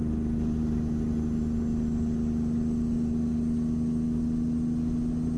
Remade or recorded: recorded